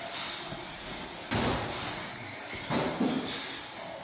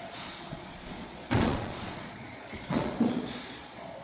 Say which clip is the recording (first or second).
first